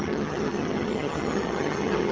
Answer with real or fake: fake